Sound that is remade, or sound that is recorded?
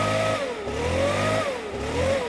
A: recorded